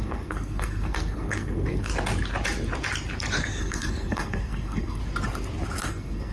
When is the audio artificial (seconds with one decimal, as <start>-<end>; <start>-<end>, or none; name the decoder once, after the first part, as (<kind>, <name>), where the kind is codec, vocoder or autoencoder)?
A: 0.0-1.9 (codec, SNAC); 3.6-5.0; 5.8-6.3

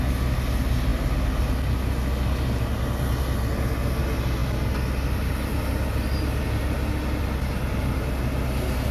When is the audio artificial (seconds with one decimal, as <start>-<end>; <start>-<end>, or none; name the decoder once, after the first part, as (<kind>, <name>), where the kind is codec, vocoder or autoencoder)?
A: none

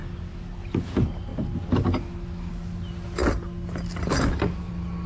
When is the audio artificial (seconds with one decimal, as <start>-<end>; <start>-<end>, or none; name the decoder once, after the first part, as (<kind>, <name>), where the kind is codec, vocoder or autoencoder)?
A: none

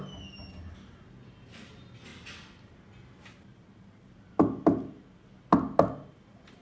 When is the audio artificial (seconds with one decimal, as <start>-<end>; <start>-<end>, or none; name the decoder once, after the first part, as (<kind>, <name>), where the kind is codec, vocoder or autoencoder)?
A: none

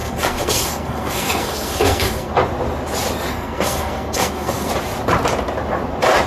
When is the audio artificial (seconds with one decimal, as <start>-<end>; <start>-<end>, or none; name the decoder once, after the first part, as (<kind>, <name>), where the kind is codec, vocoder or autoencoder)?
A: 0.0-2.3 (codec, SNAC); 3.3-4.7

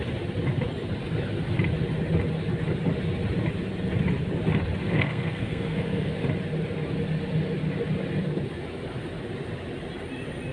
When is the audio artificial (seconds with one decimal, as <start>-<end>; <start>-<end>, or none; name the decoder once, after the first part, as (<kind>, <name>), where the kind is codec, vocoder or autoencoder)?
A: 4.8-6.1 (codec, SNAC)

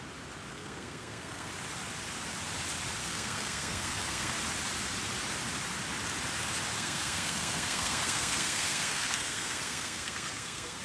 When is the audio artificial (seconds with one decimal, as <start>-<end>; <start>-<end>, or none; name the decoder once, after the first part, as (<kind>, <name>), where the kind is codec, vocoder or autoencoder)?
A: 0.5-1.5 (codec, SNAC); 3.0-4.3; 6.7-10.8

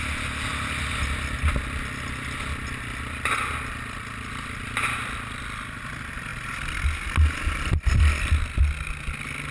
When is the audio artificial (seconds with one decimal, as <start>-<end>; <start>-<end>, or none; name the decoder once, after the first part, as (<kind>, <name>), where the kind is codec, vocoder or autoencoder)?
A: none